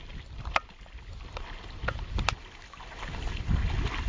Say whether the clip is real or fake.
real